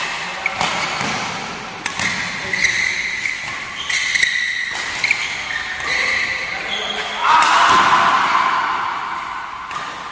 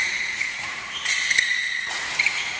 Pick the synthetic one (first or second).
second